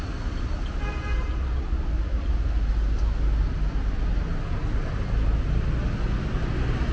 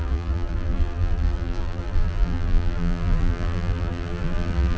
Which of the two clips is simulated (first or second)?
second